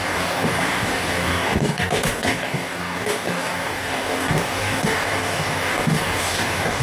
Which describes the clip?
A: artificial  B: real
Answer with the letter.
A